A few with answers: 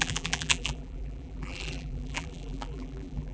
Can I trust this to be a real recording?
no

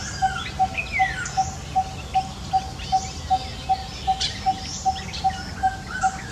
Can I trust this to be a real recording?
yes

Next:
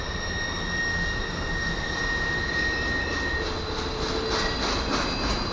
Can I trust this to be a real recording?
yes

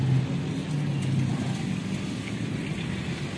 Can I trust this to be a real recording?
yes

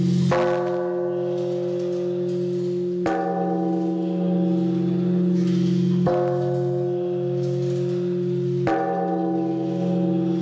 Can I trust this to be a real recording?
yes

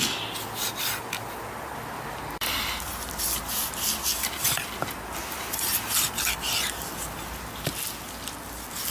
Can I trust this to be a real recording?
yes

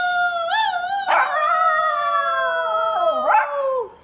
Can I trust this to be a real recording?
no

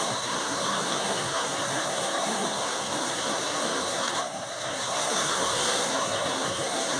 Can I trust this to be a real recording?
no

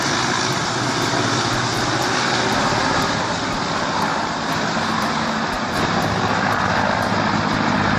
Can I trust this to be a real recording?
yes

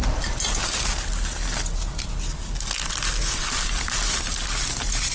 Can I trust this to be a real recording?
yes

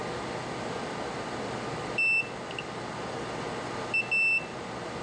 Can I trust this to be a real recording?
yes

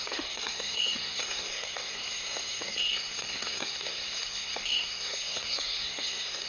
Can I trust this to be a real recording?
no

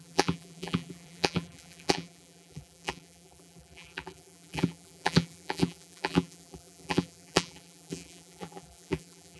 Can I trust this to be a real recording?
no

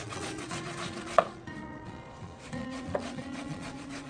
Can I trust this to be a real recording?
no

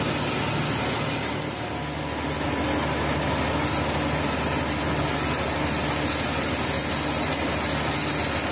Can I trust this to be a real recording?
yes